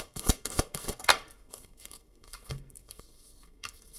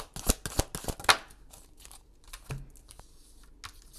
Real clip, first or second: second